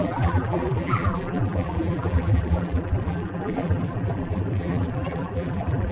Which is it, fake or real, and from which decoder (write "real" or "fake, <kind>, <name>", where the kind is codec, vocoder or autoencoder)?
fake, vocoder, BigVGAN v2